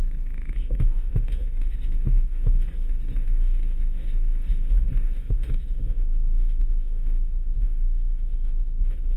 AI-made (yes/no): yes